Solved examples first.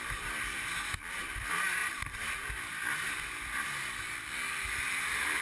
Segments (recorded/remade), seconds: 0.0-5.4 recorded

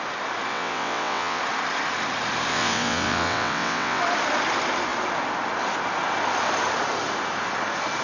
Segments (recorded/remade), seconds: 0.0-0.5 recorded; 0.5-1.4 remade; 1.4-2.5 recorded; 2.5-4.0 remade; 4.0-8.0 recorded